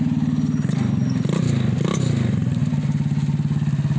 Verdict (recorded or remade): recorded